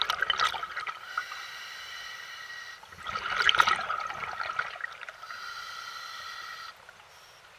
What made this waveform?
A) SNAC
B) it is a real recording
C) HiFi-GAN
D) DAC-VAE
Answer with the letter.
B